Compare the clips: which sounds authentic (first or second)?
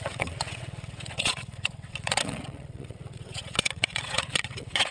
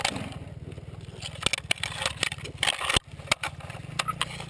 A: second